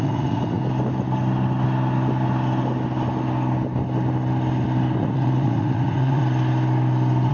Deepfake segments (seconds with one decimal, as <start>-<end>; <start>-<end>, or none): 0.0-0.6; 5.0-6.2